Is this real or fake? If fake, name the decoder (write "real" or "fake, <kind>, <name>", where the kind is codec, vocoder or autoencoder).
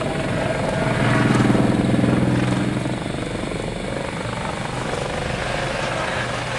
real